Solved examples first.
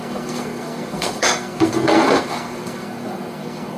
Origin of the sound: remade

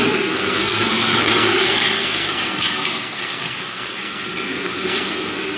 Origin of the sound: remade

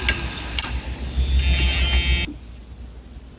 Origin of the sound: recorded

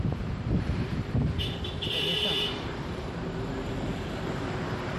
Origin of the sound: remade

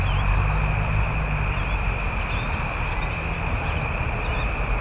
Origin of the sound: recorded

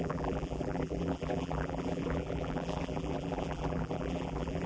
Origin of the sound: remade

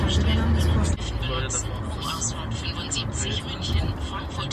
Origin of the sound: recorded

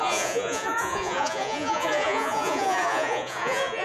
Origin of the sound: remade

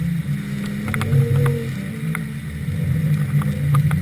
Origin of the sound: recorded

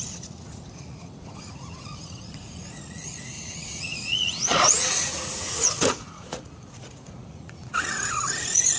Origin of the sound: remade